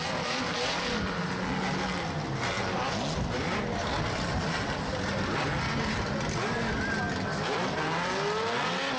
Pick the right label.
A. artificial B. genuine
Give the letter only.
B